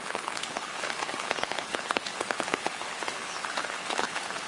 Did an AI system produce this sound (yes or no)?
yes